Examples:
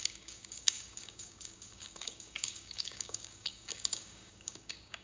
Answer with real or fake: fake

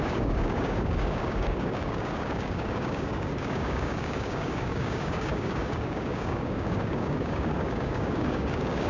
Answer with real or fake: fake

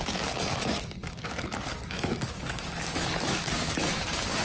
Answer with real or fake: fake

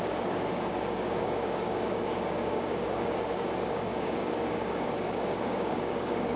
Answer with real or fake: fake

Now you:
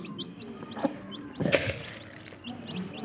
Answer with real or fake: real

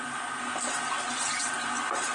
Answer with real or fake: real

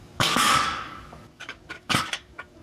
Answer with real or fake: fake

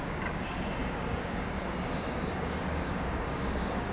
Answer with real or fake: fake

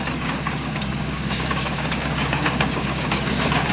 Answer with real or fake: fake